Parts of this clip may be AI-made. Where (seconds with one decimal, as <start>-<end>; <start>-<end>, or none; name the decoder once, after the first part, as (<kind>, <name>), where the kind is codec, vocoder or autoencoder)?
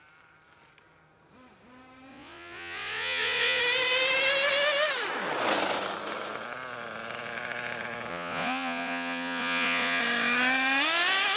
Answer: 2.1-3.6 (vocoder, Vocos); 8.1-10.0